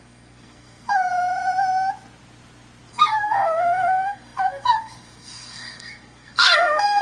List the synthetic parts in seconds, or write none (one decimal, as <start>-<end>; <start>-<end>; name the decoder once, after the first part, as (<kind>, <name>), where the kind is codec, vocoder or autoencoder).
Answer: 0.0-1.1 (codec, SNAC); 2.9-7.0